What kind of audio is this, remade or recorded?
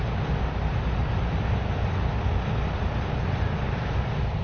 recorded